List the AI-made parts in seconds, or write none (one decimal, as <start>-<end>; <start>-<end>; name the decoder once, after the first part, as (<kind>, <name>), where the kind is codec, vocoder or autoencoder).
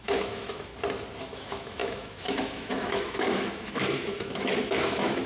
0.0-0.7 (autoencoder, DAC-VAE); 1.2-5.3